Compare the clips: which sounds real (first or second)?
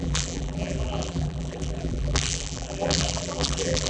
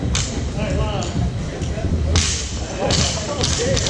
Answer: second